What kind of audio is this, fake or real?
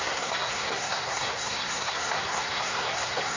fake